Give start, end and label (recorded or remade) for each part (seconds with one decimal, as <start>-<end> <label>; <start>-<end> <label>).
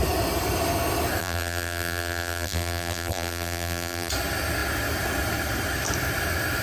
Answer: 0.0-1.2 recorded; 1.2-4.1 remade; 4.1-6.6 recorded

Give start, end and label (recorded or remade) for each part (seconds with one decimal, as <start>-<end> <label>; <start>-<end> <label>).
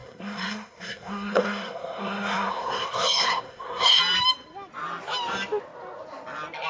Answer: 0.0-4.0 remade; 4.0-6.7 recorded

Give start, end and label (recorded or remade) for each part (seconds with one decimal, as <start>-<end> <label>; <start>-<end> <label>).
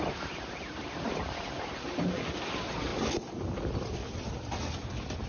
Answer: 0.0-5.3 recorded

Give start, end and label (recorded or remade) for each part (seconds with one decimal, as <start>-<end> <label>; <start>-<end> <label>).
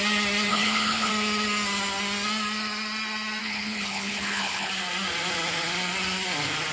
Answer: 0.0-0.5 recorded; 0.5-1.1 remade; 1.1-3.4 recorded; 3.4-4.7 remade; 4.7-6.7 recorded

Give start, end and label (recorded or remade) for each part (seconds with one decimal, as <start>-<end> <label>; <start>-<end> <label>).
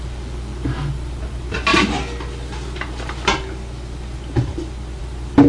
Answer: 0.0-5.5 recorded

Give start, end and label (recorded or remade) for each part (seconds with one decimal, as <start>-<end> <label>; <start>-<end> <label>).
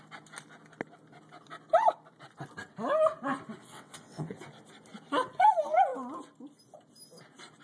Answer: 0.0-3.6 recorded; 3.6-4.3 remade; 4.3-7.6 recorded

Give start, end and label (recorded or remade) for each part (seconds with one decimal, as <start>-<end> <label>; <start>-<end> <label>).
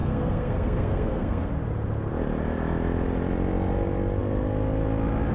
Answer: 0.0-1.5 remade; 1.5-5.3 recorded